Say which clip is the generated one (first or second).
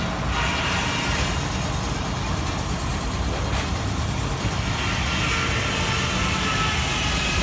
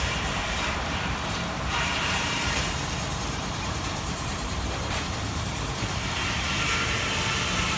second